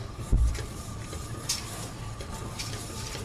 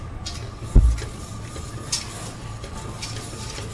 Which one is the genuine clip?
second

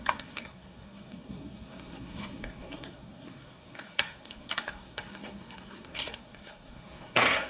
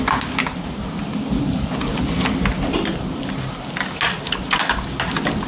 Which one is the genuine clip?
second